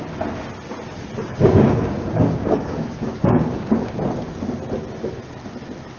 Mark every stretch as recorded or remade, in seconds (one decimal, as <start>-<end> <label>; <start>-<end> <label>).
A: 0.0-1.2 recorded; 1.2-4.0 remade; 4.0-6.0 recorded